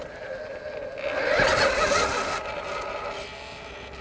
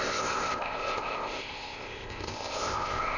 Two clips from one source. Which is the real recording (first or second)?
first